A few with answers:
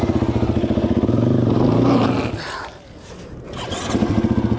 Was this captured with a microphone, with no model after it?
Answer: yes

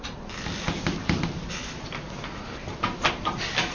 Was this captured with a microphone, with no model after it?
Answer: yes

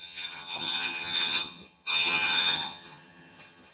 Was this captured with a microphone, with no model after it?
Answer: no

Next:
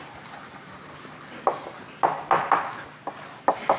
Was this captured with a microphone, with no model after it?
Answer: yes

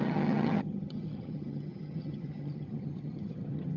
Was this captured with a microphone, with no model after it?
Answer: no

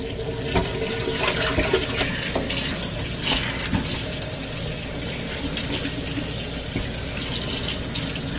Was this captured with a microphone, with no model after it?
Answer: yes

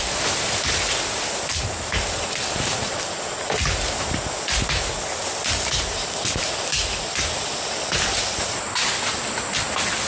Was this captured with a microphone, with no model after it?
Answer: yes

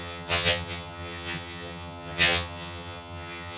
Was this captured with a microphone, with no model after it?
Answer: no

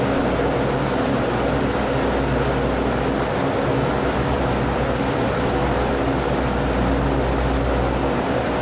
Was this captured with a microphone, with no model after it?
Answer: yes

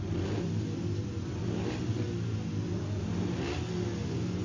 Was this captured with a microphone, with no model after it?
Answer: yes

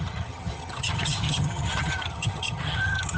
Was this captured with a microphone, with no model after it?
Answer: no